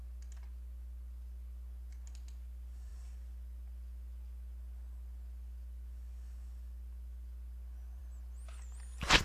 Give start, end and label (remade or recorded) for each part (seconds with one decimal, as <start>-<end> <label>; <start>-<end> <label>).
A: 0.0-9.2 recorded